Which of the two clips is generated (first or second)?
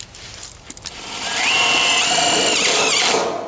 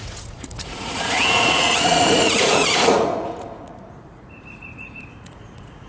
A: second